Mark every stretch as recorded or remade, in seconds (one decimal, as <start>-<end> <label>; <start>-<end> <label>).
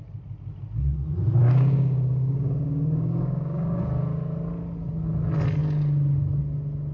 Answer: 0.0-1.4 recorded; 1.4-3.8 remade; 3.8-6.9 recorded